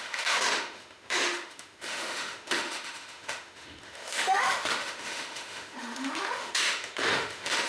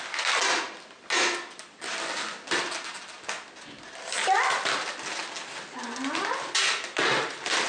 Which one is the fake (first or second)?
first